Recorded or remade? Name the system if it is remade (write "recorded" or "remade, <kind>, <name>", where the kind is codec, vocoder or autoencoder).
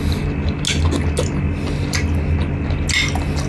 recorded